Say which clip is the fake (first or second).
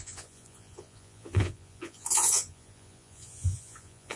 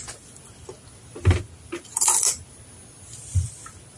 first